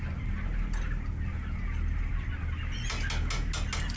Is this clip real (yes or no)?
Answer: yes